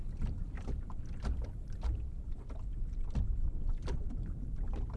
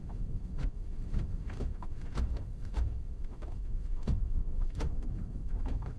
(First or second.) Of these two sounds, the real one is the first